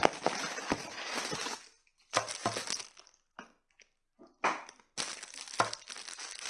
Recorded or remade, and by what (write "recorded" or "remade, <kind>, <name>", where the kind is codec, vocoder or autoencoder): recorded